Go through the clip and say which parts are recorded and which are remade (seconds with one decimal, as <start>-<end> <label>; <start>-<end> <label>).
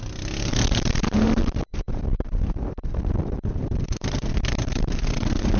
0.0-5.6 recorded